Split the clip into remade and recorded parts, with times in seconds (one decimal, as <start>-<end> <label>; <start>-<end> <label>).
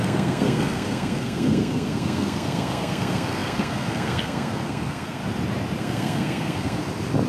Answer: 0.0-5.2 remade; 5.2-5.8 recorded; 5.8-6.8 remade; 6.8-7.3 recorded